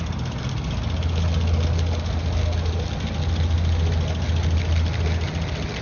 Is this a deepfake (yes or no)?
no